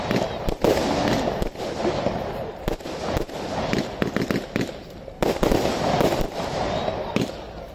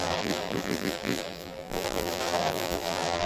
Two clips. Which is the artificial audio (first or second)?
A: second